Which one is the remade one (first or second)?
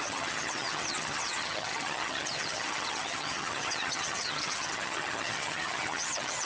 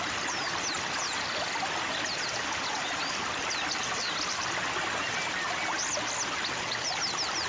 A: first